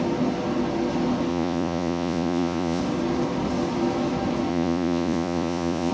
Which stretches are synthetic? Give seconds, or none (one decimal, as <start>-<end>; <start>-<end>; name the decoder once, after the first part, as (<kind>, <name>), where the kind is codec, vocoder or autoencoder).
1.3-2.8 (vocoder, Vocos); 4.5-5.9